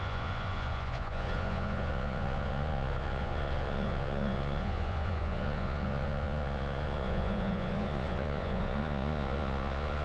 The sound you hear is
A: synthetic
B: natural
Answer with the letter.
A